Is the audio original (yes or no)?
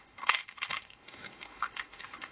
no